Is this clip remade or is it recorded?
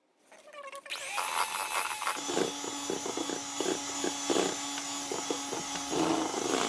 recorded